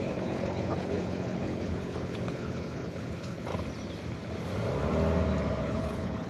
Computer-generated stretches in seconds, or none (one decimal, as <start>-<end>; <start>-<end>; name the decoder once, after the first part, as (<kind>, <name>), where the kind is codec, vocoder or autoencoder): 0.0-3.5 (codec, HILCodec); 5.6-6.3